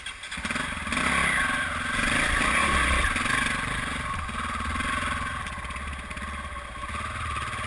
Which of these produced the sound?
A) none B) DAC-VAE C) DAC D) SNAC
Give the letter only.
A